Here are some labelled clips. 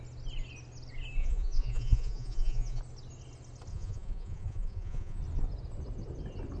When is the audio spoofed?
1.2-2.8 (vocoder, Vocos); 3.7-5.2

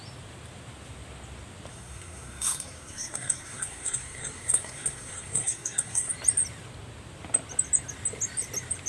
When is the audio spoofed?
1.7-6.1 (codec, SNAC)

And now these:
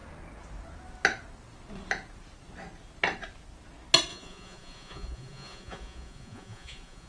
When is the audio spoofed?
4.1-7.1 (vocoder, Vocos)

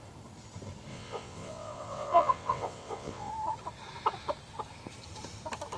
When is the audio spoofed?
0.9-3.3 (vocoder, WaveNeXt)